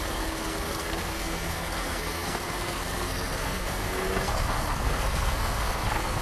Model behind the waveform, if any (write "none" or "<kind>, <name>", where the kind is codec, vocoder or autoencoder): codec, SNAC